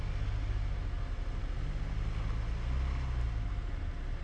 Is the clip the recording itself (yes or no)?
yes